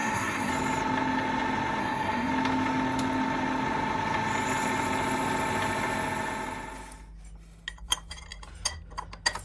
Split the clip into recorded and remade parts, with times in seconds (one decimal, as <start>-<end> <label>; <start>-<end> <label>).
0.0-0.5 remade; 0.5-1.8 recorded; 1.8-2.3 remade; 2.3-9.4 recorded